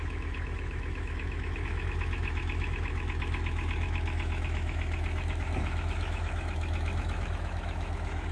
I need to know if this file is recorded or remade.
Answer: remade